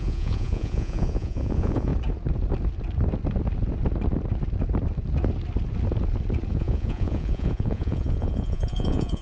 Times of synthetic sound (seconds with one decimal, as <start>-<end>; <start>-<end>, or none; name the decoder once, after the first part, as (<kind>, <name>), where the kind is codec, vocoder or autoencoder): 0.0-1.9 (vocoder, Vocos); 6.5-9.2